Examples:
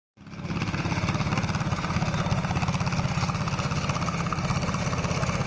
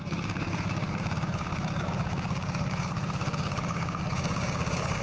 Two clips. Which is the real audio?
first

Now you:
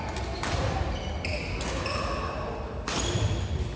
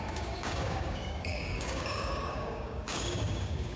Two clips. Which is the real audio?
first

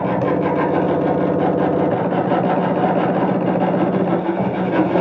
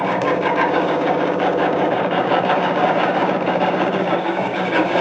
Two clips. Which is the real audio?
first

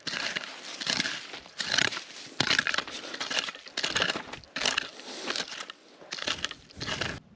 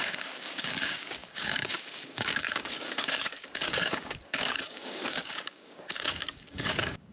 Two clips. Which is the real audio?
first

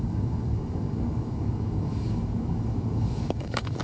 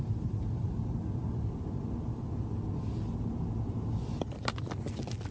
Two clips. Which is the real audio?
second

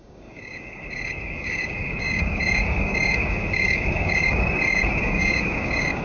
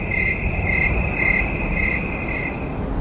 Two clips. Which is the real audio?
second